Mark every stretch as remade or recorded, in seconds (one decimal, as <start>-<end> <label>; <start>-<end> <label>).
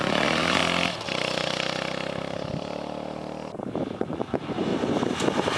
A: 0.0-0.6 remade; 0.6-4.0 recorded; 4.0-4.7 remade; 4.7-5.6 recorded